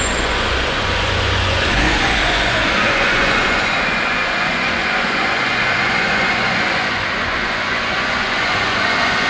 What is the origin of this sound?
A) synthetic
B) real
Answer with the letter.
A